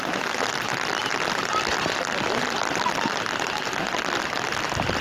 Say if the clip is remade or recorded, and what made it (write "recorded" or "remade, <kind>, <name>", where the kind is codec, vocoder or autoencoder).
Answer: recorded